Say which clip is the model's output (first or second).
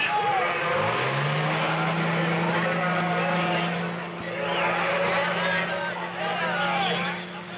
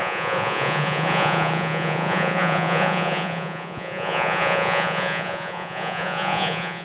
second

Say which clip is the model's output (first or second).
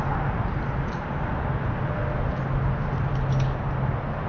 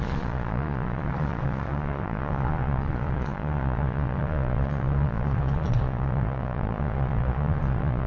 second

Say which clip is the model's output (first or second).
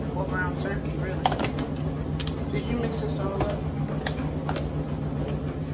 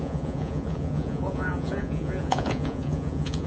second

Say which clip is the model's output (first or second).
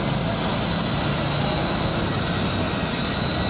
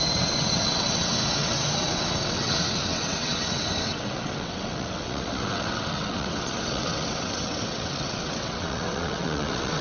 second